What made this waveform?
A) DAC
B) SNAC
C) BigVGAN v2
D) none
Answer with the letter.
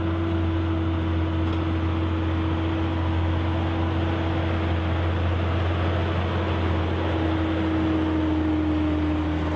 D